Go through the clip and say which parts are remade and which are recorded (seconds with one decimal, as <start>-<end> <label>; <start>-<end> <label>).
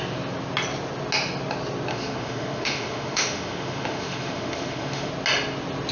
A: 0.0-1.9 recorded; 1.9-5.1 remade; 5.1-5.9 recorded